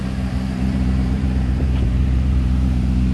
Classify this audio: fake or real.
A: fake